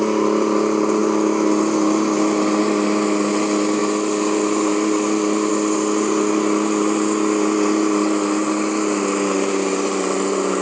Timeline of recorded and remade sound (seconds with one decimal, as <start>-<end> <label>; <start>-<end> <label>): 0.0-10.6 recorded